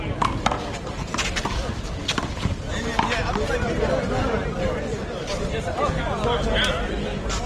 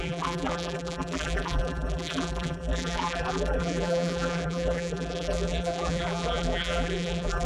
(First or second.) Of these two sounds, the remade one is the second